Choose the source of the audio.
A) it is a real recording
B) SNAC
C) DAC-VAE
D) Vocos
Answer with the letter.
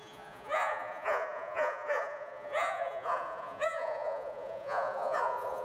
D